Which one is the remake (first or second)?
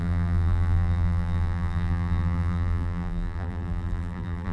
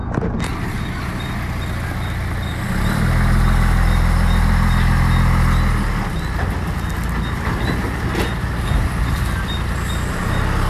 first